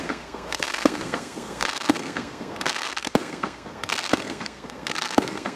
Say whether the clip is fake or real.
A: fake